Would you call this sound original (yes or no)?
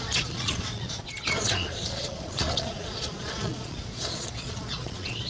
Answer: no